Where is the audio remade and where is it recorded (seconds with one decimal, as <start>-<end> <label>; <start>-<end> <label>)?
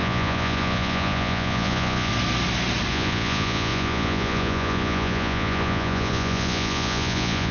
0.0-2.1 remade; 2.1-2.9 recorded; 2.9-7.5 remade